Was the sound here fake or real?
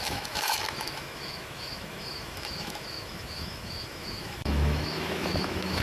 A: fake